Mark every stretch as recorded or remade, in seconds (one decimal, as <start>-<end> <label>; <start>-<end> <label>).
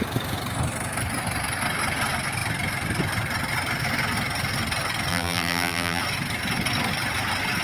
0.0-5.1 recorded; 5.1-6.0 remade; 6.0-7.6 recorded